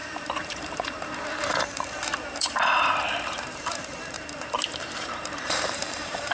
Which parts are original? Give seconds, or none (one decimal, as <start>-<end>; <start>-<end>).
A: none